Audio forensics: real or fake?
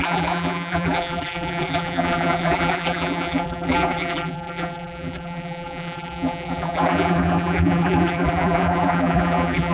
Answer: fake